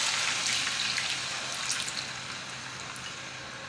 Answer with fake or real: real